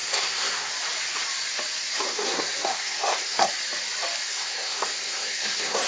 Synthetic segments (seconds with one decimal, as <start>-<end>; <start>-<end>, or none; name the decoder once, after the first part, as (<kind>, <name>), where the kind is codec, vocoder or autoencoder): 0.0-0.7 (codec, SNAC); 2.1-3.5; 4.2-5.9